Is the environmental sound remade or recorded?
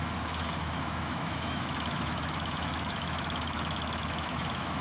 remade